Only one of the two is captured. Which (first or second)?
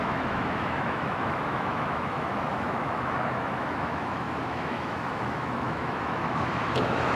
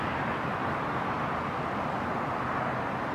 second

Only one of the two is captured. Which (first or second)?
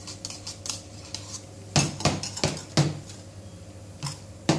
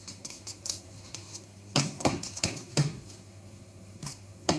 first